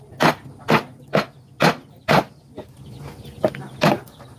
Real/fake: real